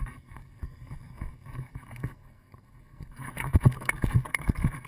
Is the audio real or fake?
fake